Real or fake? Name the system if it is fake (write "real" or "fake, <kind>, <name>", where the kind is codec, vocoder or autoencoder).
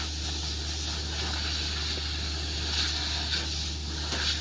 real